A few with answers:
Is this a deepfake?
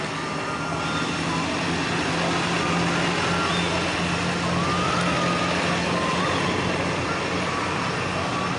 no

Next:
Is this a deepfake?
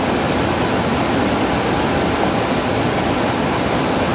no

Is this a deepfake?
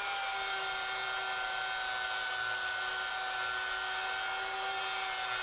no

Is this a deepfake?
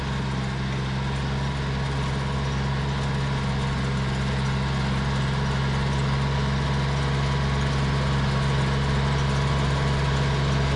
no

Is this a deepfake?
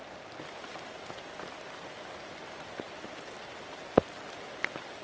no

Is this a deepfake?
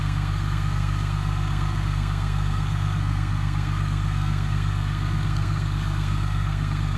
yes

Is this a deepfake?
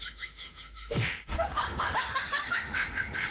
yes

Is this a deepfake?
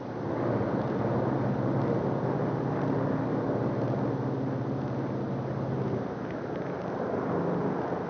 no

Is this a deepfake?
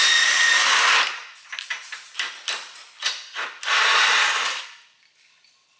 no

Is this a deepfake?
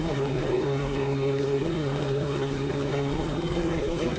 yes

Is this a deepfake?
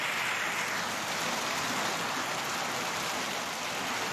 no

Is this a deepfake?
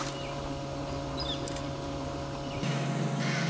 no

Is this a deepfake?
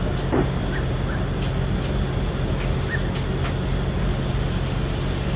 no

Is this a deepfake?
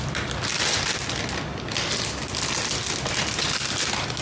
no